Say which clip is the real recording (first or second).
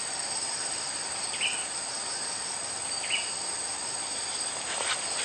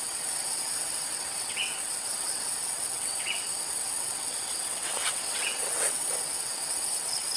first